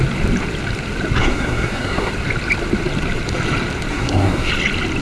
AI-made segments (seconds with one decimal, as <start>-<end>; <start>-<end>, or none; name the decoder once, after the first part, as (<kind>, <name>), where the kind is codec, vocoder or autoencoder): 1.2-2.1 (codec, SNAC); 3.9-4.5